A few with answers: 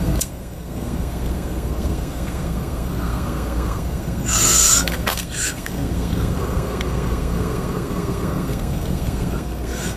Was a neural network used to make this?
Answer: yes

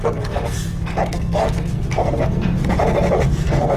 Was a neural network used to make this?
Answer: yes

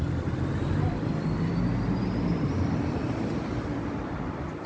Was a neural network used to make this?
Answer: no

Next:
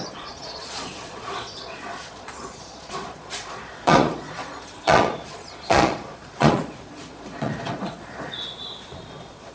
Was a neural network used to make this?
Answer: yes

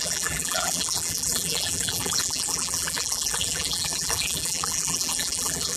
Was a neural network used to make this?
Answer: yes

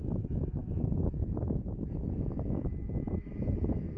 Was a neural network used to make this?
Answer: yes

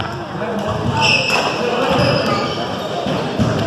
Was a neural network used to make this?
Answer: no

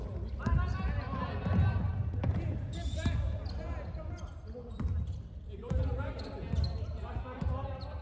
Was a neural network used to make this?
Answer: no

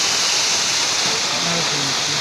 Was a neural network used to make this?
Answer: no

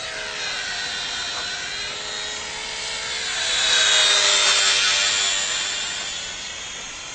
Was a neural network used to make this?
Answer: no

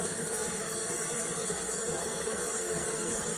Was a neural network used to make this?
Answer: yes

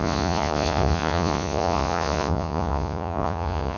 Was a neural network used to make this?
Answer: yes